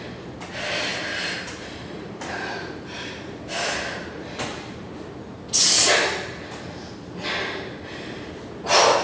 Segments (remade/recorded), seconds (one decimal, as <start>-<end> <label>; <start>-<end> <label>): 0.0-0.9 recorded; 0.9-3.8 remade; 3.8-9.0 recorded